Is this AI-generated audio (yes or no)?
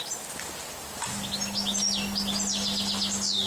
no